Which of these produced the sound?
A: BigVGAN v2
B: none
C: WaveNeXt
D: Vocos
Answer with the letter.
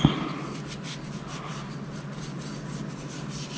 B